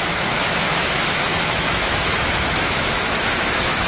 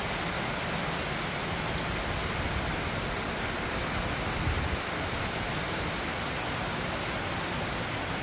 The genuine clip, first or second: second